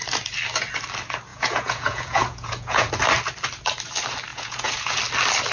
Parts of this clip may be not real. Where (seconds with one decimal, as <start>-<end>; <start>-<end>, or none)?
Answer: 1.3-2.9; 4.3-5.0

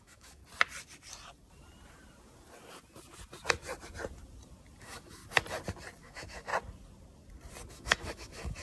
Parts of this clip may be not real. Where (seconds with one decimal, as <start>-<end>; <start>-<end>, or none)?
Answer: 0.0-0.4; 4.8-5.2; 6.0-6.5; 7.7-8.6

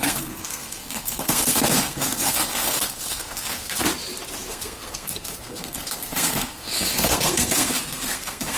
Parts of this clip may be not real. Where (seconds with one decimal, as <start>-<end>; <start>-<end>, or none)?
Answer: 0.0-3.9; 4.5-8.6

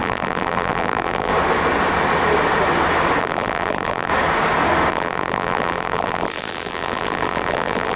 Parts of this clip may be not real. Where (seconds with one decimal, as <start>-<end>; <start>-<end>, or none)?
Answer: 0.0-1.3; 3.2-4.1; 4.9-8.0